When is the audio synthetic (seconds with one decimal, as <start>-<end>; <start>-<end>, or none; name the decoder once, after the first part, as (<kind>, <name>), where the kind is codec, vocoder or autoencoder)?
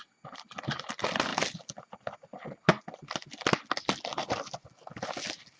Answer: none